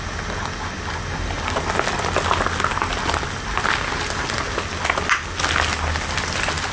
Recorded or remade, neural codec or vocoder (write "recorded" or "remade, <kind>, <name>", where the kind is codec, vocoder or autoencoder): recorded